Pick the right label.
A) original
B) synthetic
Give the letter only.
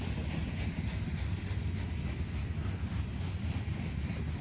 A